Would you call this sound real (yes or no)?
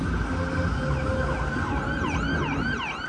yes